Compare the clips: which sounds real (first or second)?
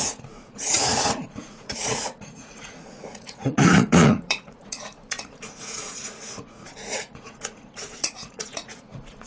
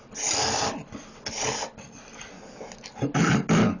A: second